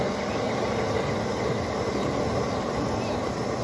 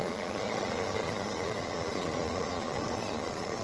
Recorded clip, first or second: first